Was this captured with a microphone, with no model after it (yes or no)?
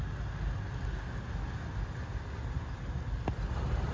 yes